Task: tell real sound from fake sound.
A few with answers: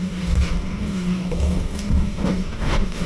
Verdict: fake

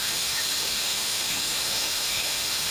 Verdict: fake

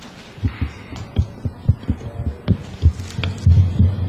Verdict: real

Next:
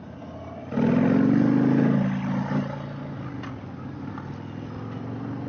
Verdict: real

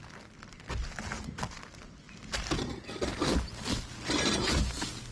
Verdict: real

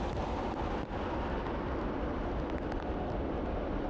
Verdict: real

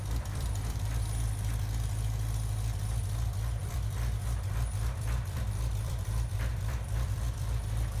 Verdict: fake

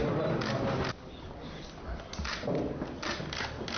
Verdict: real